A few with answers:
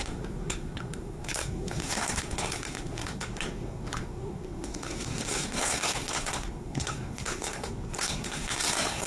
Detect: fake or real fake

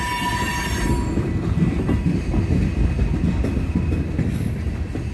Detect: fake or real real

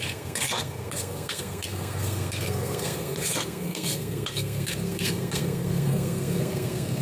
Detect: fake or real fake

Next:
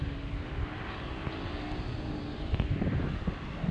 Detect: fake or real real